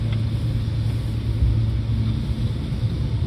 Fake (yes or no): no